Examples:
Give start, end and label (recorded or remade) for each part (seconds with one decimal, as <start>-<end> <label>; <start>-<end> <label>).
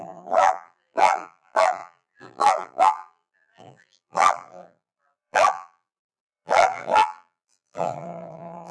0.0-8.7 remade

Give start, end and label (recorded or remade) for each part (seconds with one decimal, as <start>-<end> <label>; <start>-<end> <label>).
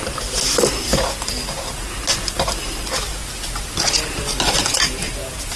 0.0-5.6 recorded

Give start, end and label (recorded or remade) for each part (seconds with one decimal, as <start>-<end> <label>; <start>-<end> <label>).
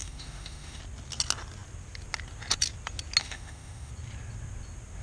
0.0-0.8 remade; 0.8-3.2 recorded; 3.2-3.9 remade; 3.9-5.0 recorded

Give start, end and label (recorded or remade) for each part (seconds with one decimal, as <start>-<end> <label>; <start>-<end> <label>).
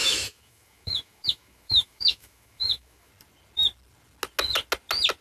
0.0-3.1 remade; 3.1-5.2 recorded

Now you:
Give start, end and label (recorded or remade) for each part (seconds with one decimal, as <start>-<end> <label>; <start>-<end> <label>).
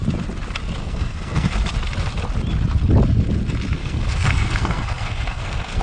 0.0-0.8 recorded; 0.8-1.5 remade; 1.5-3.8 recorded; 3.8-5.8 remade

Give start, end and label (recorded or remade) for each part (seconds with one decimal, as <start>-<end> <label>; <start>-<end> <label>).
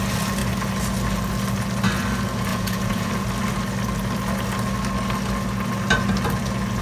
0.0-2.5 recorded; 2.5-3.1 remade; 3.1-6.8 recorded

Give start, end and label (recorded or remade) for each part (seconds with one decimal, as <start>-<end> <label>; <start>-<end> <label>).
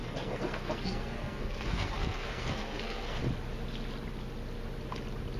0.0-3.2 remade; 3.2-5.4 recorded